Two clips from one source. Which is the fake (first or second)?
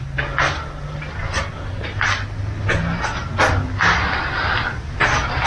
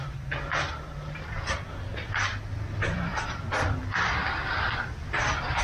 second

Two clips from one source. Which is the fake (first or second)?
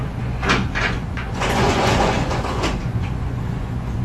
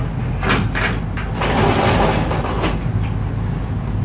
first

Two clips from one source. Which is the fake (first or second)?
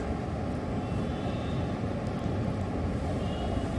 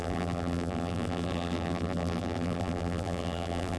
second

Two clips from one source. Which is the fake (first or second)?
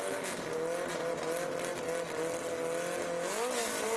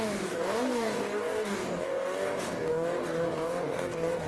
second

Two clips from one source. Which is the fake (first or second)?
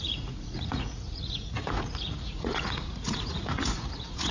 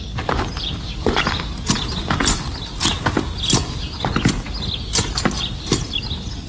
first